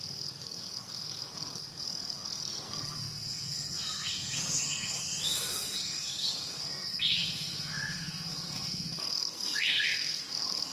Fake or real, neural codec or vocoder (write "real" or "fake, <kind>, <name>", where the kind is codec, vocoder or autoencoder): fake, codec, SNAC